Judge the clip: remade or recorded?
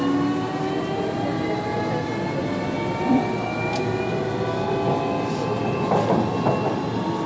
recorded